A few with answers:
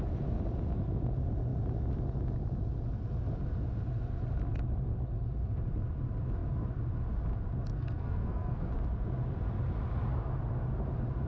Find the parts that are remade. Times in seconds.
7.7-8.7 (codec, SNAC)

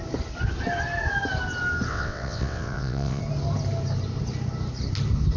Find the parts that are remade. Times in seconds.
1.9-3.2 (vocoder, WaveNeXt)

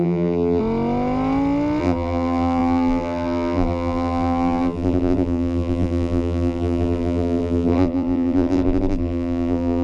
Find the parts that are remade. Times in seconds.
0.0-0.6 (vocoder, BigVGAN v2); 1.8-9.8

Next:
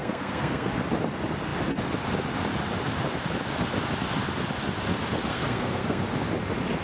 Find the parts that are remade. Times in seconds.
0.0-0.7 (codec, SNAC); 5.3-6.0

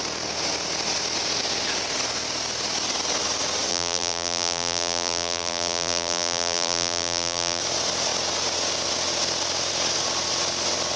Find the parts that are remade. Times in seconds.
3.7-7.6 (vocoder, BigVGAN v2)

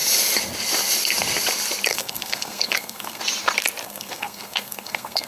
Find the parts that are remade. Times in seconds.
1.9-3.2 (codec, SNAC); 3.8-5.3